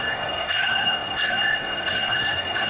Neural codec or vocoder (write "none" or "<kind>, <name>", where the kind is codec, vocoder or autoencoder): codec, SNAC